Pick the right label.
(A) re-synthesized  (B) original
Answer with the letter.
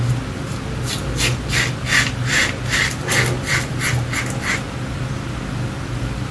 B